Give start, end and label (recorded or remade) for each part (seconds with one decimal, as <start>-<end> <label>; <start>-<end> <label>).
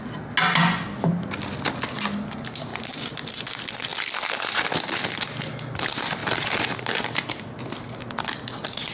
0.0-2.7 recorded; 2.7-3.3 remade; 3.3-6.2 recorded; 6.2-7.3 remade; 7.3-8.9 recorded